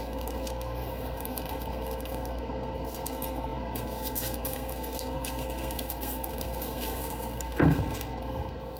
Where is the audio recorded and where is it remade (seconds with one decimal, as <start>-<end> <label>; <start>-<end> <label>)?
0.0-8.8 remade